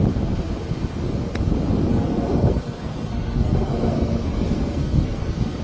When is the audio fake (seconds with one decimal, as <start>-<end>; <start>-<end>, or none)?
1.9-5.6